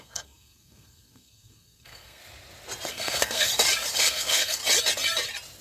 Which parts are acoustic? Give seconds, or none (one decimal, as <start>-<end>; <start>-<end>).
2.2-2.9; 3.5-4.0; 4.6-5.6